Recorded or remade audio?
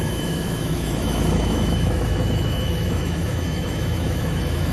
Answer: remade